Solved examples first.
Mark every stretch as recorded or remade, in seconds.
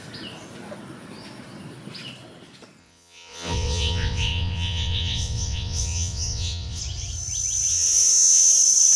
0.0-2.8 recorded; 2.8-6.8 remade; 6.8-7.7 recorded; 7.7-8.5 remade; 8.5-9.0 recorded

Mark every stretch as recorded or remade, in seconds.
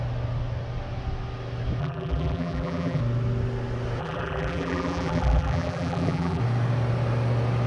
0.0-1.8 recorded; 1.8-3.0 remade; 3.0-4.0 recorded; 4.0-6.4 remade; 6.4-7.7 recorded